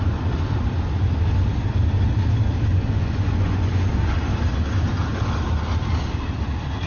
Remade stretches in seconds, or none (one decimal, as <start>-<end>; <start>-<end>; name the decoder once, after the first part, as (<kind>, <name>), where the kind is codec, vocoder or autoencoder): 2.7-3.9 (vocoder, Vocos)